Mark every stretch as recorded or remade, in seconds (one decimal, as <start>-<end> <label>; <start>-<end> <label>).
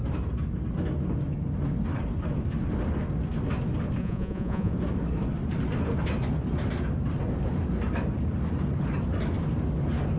0.0-4.0 recorded; 4.0-4.7 remade; 4.7-10.2 recorded